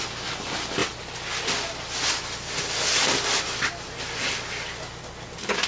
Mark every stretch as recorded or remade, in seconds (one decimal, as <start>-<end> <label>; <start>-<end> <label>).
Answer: 0.0-5.7 recorded